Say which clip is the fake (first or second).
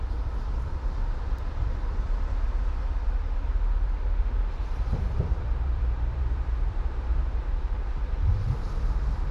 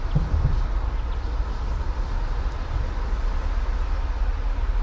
first